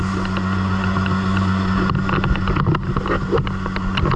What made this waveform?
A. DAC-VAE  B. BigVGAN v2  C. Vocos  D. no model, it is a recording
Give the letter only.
D